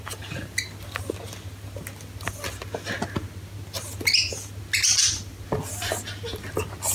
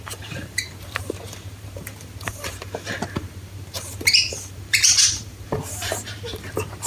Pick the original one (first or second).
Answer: first